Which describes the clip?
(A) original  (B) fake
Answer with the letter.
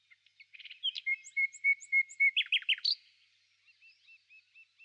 A